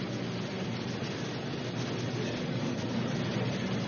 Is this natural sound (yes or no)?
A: yes